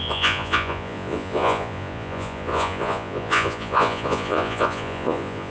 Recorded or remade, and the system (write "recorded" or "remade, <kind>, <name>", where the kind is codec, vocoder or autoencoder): remade, vocoder, Vocos